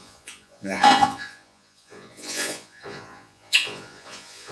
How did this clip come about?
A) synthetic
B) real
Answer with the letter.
A